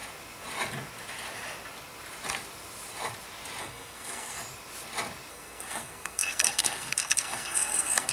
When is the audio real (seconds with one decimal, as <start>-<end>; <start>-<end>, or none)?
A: 0.0-3.6; 4.4-5.3